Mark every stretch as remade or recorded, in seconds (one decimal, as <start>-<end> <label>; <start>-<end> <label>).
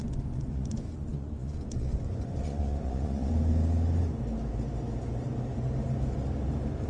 0.0-3.3 remade; 3.3-6.9 recorded